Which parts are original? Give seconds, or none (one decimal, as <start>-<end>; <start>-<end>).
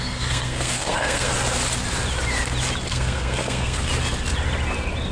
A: 1.3-2.9; 3.9-5.1